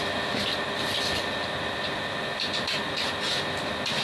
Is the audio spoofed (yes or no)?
no